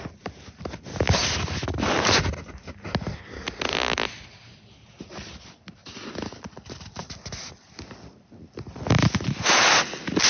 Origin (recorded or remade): recorded